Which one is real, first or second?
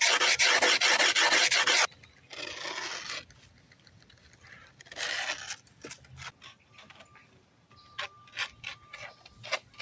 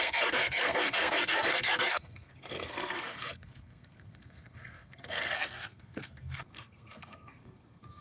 first